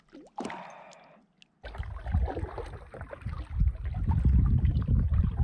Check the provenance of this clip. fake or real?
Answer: real